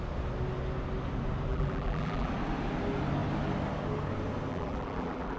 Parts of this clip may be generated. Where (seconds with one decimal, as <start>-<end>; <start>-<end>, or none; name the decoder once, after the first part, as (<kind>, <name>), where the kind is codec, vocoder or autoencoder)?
1.5-2.3 (vocoder, BigVGAN v2); 4.5-5.4

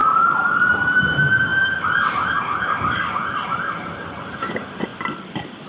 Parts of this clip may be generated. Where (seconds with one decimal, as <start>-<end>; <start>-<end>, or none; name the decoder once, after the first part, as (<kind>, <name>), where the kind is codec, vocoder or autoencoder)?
0.5-4.9 (vocoder, BigVGAN v2)

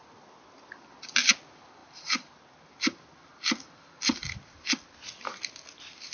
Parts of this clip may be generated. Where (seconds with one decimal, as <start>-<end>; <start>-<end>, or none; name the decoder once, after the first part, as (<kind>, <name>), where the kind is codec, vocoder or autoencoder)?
1.8-2.4 (vocoder, BigVGAN v2)

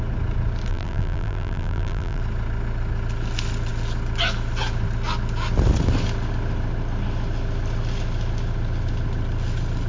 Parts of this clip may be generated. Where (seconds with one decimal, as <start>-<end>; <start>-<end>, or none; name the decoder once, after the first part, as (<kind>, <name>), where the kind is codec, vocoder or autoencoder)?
0.7-2.2 (vocoder, BigVGAN v2)

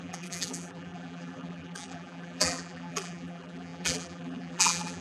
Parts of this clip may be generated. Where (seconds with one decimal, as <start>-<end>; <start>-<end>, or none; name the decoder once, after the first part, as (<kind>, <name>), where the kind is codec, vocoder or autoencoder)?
0.0-5.0 (vocoder, BigVGAN v2)

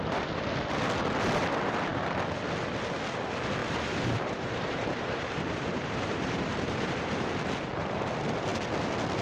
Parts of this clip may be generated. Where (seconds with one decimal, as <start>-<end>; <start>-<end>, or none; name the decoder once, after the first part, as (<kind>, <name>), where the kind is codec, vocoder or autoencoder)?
3.6-7.3 (vocoder, BigVGAN v2)